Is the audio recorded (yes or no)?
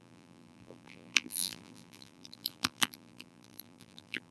no